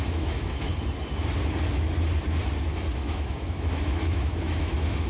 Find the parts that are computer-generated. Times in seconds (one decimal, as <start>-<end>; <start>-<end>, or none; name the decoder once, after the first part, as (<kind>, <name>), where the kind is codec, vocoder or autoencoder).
0.0-0.7 (autoencoder, DAC-VAE); 2.9-5.1